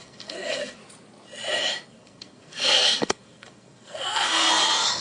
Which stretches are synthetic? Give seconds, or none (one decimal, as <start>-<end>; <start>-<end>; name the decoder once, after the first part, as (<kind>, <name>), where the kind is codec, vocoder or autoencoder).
0.0-0.8 (codec, SNAC); 1.9-5.0